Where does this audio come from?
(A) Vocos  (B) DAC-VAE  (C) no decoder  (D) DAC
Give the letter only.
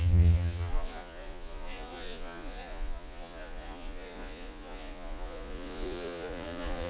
A